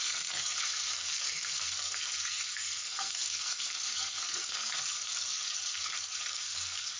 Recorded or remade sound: remade